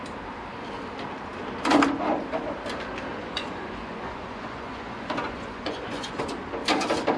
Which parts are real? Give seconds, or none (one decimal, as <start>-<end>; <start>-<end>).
0.0-3.1; 6.2-7.2